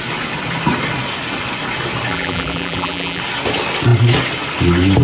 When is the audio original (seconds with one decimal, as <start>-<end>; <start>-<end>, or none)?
0.0-2.1; 3.2-5.0